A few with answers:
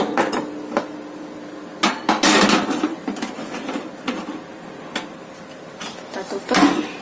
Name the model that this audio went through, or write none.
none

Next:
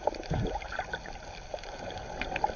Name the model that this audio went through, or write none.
none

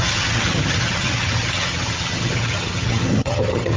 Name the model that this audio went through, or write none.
vocoder, HiFi-GAN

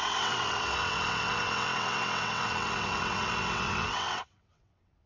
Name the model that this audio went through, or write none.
vocoder, WaveNeXt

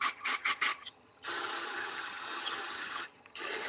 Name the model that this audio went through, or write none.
vocoder, HiFi-GAN